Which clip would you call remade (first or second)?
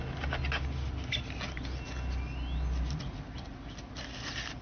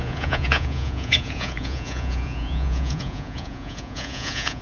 second